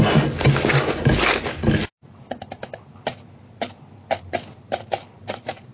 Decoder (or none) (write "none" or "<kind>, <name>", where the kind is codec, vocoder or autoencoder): none